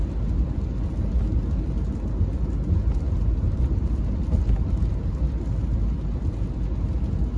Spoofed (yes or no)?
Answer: no